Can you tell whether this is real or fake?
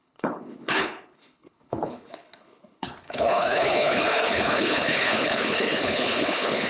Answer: fake